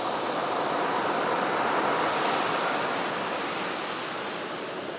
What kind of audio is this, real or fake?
real